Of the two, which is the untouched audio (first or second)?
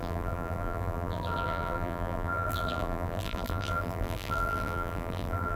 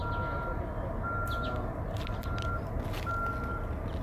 second